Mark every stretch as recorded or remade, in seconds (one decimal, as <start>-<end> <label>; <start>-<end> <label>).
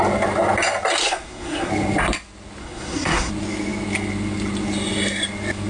0.0-1.0 recorded; 1.0-1.7 remade; 1.7-2.6 recorded; 2.6-3.3 remade; 3.3-5.7 recorded